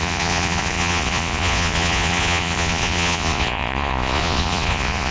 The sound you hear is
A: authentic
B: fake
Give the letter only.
B